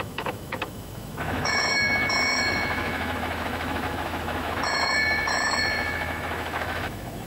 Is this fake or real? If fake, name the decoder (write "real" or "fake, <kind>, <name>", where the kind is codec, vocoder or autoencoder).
fake, autoencoder, DAC-VAE